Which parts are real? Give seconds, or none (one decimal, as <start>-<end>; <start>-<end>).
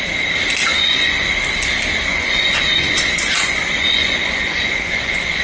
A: 0.0-0.7; 1.5-2.1